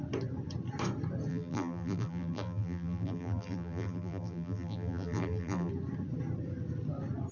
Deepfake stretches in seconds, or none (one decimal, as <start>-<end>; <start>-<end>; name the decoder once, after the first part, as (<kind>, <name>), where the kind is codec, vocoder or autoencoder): 1.3-5.7 (vocoder, BigVGAN v2)